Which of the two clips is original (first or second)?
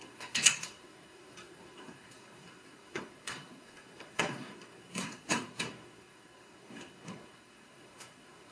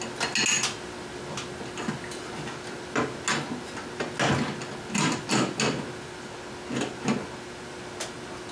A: second